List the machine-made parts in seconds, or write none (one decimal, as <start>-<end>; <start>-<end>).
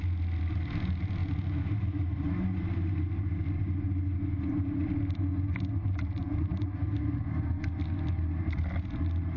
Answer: 6.2-7.2